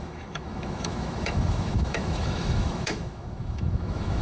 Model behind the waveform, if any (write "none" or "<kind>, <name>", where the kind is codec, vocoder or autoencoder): autoencoder, DAC-VAE